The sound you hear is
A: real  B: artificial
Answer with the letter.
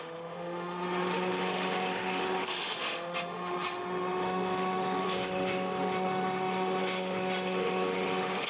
B